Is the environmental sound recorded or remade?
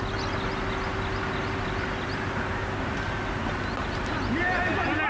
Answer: recorded